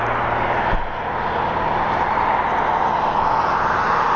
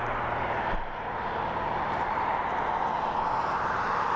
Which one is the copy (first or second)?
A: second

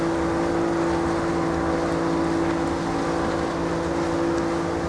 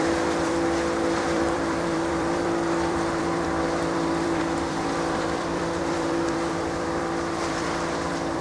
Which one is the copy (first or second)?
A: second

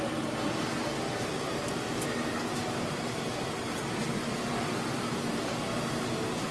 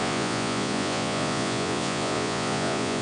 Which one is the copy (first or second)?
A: second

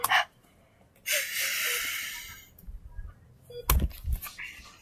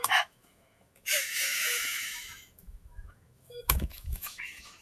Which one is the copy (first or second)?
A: second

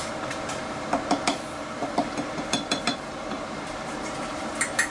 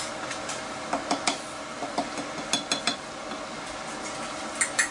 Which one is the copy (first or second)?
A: first